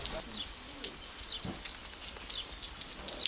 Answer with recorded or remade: recorded